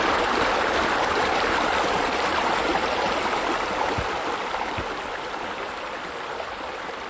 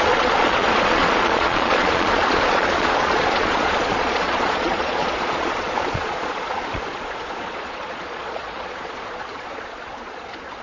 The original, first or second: first